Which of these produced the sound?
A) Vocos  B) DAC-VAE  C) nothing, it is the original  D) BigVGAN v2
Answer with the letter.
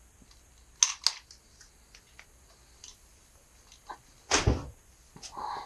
C